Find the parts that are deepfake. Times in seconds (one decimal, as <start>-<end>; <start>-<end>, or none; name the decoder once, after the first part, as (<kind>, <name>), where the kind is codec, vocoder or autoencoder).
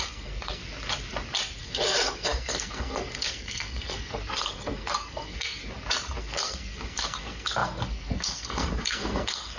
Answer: 0.0-0.6 (codec, SNAC); 1.6-5.6; 6.2-9.6